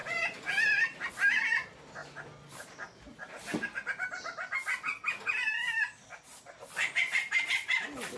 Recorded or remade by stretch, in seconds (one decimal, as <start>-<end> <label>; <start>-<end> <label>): 0.0-8.2 recorded